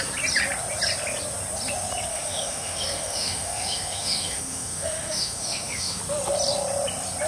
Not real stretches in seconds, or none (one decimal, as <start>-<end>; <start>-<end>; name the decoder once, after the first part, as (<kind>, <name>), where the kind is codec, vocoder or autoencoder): 2.1-6.0 (autoencoder, DAC-VAE)